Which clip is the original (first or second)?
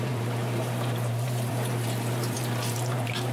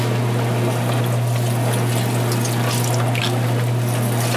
second